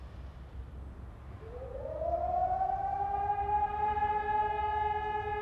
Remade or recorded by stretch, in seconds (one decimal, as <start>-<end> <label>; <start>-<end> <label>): 0.0-5.4 recorded